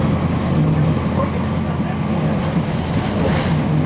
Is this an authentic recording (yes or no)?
yes